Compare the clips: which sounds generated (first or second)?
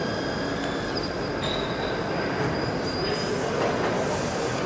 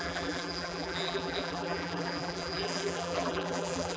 second